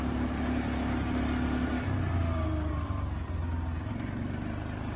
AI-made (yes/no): no